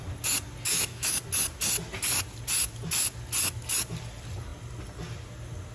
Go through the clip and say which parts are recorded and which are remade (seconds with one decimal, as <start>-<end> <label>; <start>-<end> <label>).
0.0-0.7 recorded; 0.7-1.2 remade; 1.2-5.7 recorded